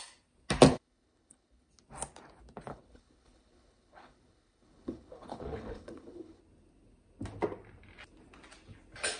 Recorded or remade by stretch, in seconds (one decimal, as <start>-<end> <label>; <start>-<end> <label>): 0.0-0.7 recorded; 0.7-1.7 remade; 1.7-2.7 recorded; 2.7-6.4 remade; 6.4-9.2 recorded

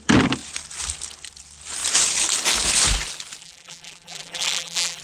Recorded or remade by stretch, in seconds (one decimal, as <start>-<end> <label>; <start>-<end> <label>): 0.0-3.4 recorded; 3.4-5.0 remade

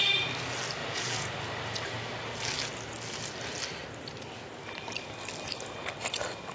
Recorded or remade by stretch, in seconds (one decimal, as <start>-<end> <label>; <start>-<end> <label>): 0.0-0.8 recorded; 0.8-1.3 remade; 1.3-6.5 recorded

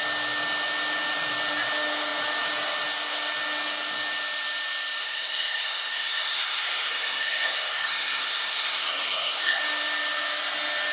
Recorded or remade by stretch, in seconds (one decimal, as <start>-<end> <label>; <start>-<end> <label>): 0.0-5.0 recorded; 5.0-9.6 remade; 9.6-10.9 recorded

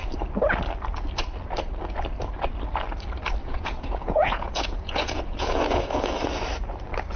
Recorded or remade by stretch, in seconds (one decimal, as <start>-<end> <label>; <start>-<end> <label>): 0.0-3.4 recorded; 3.4-6.1 remade; 6.1-7.2 recorded

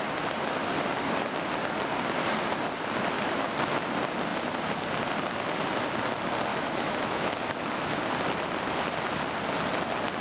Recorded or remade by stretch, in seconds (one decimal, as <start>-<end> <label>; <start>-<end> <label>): 0.0-6.5 recorded; 6.5-7.4 remade; 7.4-10.2 recorded